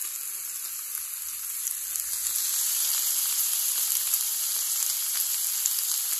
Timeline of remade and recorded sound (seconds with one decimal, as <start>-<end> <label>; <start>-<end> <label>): 0.0-6.2 recorded